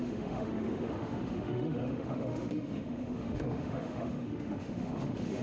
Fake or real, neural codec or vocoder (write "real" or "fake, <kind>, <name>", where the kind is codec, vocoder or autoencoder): fake, autoencoder, DAC-VAE